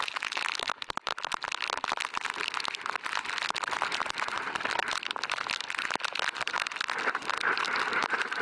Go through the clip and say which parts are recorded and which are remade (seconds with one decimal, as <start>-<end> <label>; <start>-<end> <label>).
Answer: 0.0-8.4 recorded